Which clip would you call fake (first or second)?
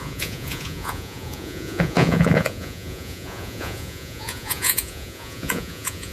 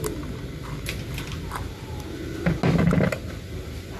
first